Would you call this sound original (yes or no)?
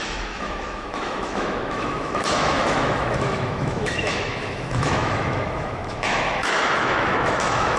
no